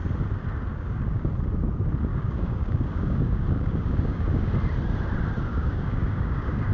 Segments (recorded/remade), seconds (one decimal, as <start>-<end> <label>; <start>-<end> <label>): 0.0-0.7 recorded; 0.7-1.3 remade; 1.3-2.1 recorded; 2.1-4.5 remade; 4.5-5.5 recorded; 5.5-6.7 remade